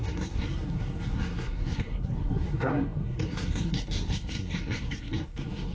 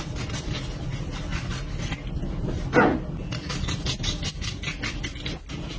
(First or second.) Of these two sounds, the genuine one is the second